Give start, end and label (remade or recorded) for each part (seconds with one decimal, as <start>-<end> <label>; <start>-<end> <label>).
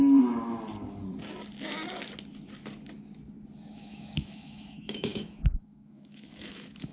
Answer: 0.0-3.7 recorded; 3.7-6.9 remade